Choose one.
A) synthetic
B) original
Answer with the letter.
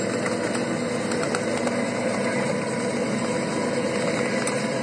B